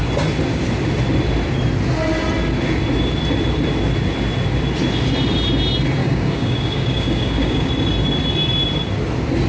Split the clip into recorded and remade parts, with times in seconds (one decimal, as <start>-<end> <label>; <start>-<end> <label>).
0.0-6.0 recorded; 6.0-7.7 remade; 7.7-9.5 recorded